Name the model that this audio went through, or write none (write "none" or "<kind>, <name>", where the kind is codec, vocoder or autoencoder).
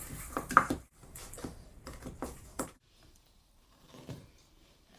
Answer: vocoder, BigVGAN v2